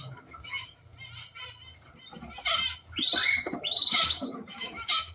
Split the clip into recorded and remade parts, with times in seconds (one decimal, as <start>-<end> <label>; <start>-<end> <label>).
0.0-0.8 remade; 0.8-3.9 recorded; 3.9-5.1 remade